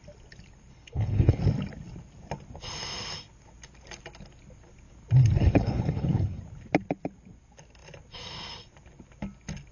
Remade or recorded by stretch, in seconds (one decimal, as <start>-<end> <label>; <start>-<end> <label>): 0.0-0.7 recorded; 0.7-1.4 remade; 1.4-5.4 recorded; 5.4-6.4 remade; 6.4-9.7 recorded